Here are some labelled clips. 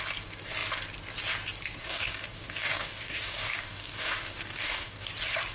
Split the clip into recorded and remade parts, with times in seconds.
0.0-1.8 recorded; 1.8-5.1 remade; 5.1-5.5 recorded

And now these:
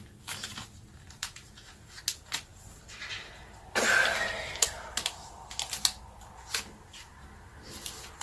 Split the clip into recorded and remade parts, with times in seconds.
0.0-1.2 recorded; 1.2-2.0 remade; 2.0-8.2 recorded